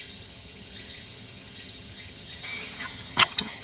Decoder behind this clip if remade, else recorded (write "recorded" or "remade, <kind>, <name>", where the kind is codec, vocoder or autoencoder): remade, vocoder, HiFi-GAN